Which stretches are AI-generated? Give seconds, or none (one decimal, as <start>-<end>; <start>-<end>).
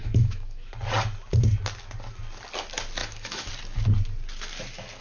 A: 0.0-0.7; 3.0-3.5